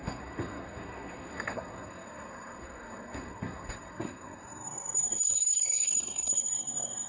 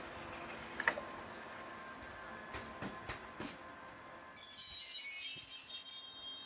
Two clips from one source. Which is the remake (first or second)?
first